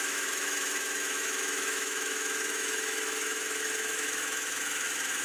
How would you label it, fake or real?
fake